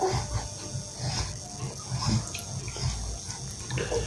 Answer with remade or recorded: recorded